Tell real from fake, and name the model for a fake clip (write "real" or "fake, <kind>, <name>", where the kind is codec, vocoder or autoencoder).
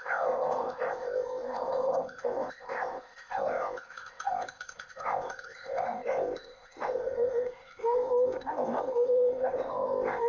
fake, codec, ZipCodec